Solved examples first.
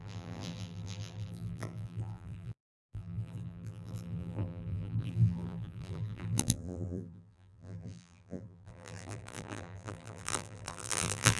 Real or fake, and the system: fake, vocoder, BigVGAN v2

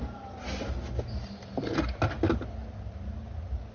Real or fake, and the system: real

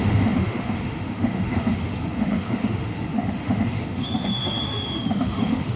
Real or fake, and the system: fake, autoencoder, DAC-VAE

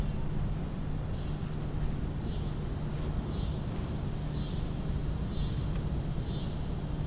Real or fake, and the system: real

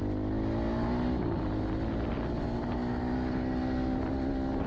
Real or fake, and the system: real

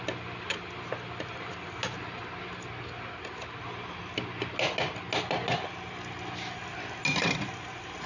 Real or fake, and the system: real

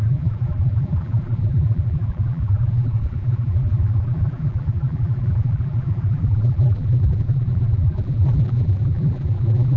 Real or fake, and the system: fake, vocoder, BigVGAN v2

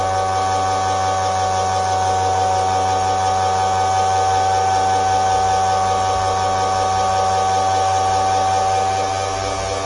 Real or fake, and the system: real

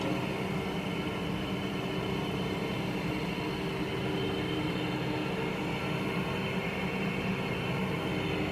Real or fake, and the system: real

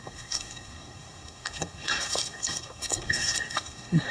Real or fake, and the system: fake, codec, SNAC